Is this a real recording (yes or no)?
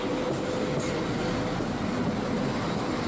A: yes